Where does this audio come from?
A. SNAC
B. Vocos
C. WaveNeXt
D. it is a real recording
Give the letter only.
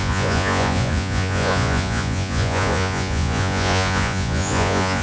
B